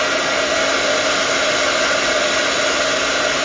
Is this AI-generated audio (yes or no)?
no